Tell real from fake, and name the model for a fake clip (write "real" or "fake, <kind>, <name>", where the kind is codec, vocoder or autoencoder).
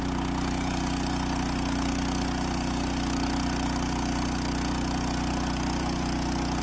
real